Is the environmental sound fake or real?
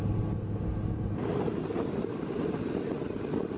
real